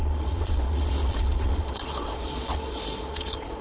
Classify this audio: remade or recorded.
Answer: remade